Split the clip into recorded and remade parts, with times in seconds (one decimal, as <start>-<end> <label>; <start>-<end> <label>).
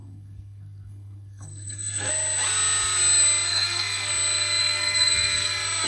0.0-2.1 remade; 2.1-3.5 recorded; 3.5-4.1 remade; 4.1-4.6 recorded; 4.6-5.5 remade; 5.5-5.9 recorded